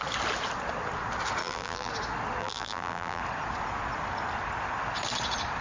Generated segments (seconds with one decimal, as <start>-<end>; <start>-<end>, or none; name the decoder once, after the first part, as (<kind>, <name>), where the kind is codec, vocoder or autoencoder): 1.4-1.9 (vocoder, BigVGAN v2); 2.4-3.2